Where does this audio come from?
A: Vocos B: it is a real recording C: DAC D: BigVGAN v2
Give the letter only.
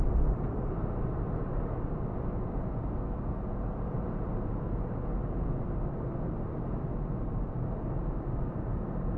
B